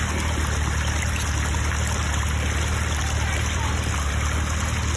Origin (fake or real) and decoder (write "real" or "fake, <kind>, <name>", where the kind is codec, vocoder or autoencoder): real